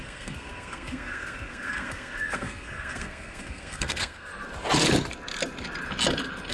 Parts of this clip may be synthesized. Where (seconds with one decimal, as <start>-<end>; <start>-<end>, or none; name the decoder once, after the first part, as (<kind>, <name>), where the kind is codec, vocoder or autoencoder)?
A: 0.0-4.3 (codec, SNAC)